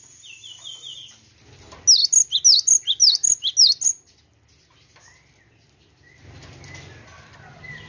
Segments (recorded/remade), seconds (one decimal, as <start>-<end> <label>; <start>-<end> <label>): 0.0-7.9 recorded